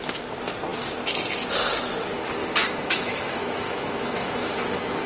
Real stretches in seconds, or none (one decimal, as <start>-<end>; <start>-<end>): 0.0-2.4